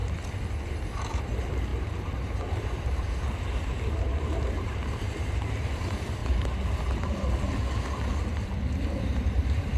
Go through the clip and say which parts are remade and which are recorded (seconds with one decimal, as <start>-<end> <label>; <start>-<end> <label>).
0.0-0.9 recorded; 0.9-6.2 remade; 6.2-9.0 recorded; 9.0-9.8 remade